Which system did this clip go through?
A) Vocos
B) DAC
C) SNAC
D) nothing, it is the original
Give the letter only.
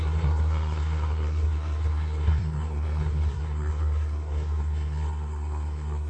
C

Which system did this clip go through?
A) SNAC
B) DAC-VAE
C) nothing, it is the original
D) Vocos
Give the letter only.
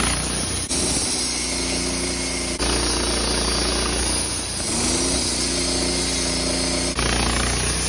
C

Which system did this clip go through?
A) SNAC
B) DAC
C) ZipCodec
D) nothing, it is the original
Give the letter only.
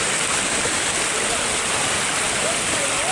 D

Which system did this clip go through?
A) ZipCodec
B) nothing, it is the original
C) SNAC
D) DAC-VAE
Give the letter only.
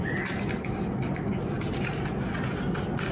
B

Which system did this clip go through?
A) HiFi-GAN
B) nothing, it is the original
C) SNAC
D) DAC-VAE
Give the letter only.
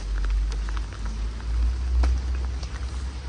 B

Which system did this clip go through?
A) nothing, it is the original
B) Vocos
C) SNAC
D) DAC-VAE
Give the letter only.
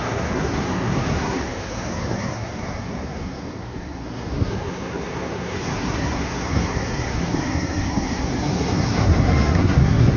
C